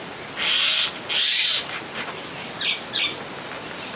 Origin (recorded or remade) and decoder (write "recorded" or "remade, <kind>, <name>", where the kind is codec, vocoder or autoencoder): recorded